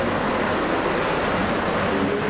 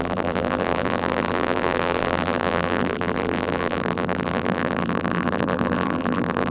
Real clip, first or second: first